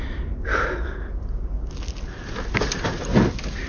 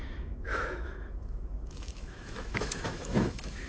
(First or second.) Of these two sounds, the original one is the first